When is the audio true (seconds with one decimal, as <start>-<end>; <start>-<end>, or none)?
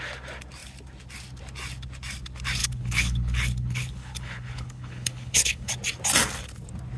0.0-2.6; 5.7-7.0